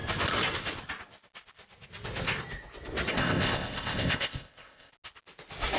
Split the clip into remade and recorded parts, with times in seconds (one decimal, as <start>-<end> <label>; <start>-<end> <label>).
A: 0.0-3.1 recorded; 3.1-4.9 remade; 4.9-5.8 recorded

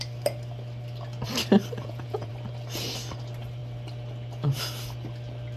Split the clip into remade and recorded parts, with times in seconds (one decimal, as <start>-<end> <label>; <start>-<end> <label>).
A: 0.0-1.8 recorded; 1.8-2.3 remade; 2.3-5.6 recorded

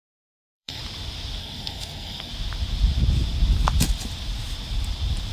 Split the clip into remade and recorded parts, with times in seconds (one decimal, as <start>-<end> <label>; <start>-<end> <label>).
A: 0.0-0.8 remade; 0.8-1.4 recorded; 1.4-2.3 remade; 2.3-5.3 recorded

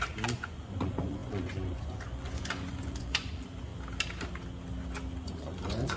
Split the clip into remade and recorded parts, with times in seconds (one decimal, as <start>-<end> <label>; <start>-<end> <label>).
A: 0.0-3.7 remade; 3.7-5.2 recorded; 5.2-6.0 remade

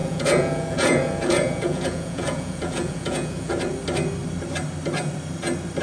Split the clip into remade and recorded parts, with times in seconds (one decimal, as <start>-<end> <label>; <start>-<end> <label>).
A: 0.0-3.5 remade; 3.5-5.8 recorded

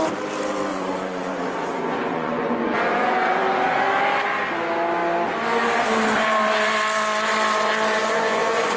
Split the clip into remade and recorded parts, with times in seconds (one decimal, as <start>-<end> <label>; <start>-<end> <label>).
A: 0.0-0.7 recorded; 0.7-3.8 remade; 3.8-8.0 recorded; 8.0-8.8 remade

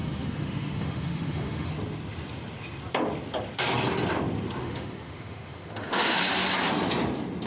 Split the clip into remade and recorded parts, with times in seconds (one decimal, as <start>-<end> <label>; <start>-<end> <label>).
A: 0.0-1.7 remade; 1.7-4.6 recorded; 4.6-6.2 remade; 6.2-7.5 recorded